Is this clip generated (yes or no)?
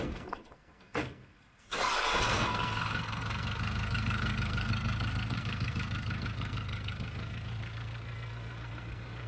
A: yes